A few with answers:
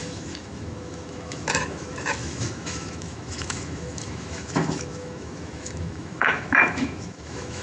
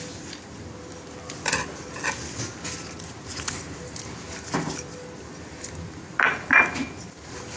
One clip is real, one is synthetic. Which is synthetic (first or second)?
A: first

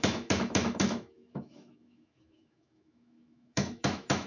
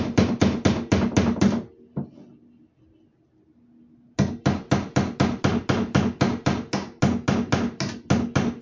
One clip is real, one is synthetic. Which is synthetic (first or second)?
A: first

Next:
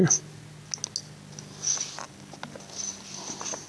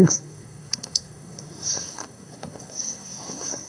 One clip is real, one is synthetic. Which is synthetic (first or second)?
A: second